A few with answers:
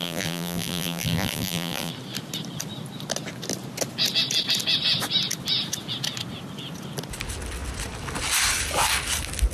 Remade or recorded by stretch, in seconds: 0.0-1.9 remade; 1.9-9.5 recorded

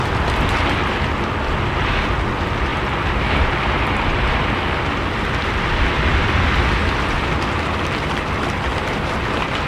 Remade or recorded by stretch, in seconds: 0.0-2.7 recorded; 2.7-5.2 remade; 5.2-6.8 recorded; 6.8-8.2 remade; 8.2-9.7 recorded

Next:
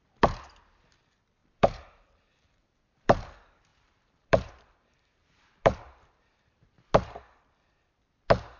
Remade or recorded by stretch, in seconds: 0.0-1.4 recorded; 1.4-3.3 remade; 3.3-3.7 recorded; 3.7-6.8 remade; 6.8-8.6 recorded